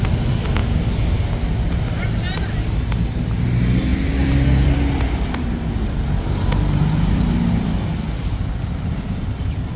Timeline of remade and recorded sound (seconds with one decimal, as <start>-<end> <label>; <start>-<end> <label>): 0.0-3.9 recorded; 3.9-6.2 remade; 6.2-9.8 recorded